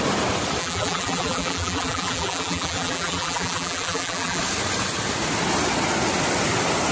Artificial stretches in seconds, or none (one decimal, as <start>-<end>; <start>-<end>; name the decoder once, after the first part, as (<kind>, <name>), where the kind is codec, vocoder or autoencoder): 0.6-4.4 (vocoder, BigVGAN v2)